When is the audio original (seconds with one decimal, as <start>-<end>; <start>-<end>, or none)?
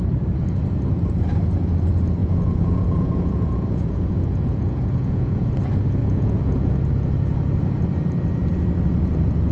0.0-2.2; 5.5-6.0; 6.7-9.5